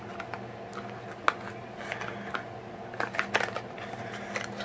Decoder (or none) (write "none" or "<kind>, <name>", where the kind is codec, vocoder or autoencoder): none